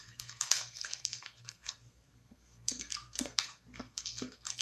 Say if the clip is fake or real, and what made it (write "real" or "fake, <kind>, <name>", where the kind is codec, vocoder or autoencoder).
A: fake, codec, SNAC